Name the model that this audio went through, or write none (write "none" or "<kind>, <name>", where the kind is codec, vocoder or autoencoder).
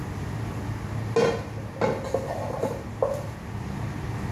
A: none